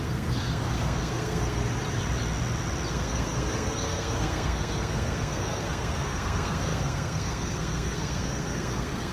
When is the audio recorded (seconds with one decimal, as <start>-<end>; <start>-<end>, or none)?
1.6-2.9